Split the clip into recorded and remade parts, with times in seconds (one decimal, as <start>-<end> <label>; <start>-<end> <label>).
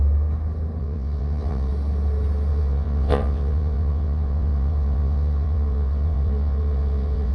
0.0-0.8 recorded; 0.8-1.7 remade; 1.7-2.5 recorded; 2.5-7.3 remade